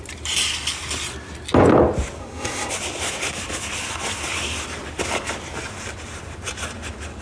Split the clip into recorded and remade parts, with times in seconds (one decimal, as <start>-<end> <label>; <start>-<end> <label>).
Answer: 0.0-2.2 recorded; 2.2-2.7 remade; 2.7-7.2 recorded